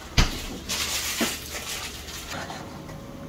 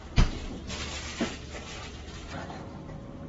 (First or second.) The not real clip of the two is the second